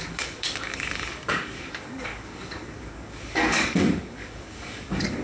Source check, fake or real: fake